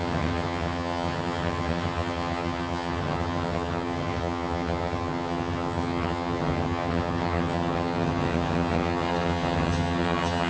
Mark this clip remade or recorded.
remade